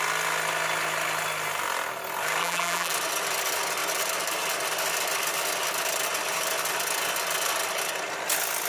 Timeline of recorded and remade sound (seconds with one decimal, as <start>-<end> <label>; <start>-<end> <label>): 0.0-2.4 recorded; 2.4-2.9 remade; 2.9-8.7 recorded